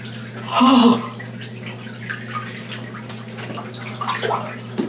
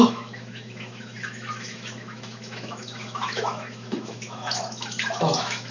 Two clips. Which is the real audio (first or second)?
first